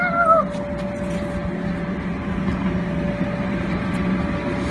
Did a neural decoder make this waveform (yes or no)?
no